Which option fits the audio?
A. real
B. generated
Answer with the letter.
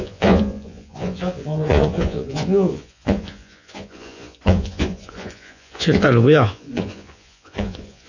B